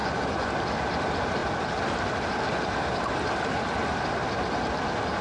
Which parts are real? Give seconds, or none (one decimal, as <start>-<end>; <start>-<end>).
0.5-5.2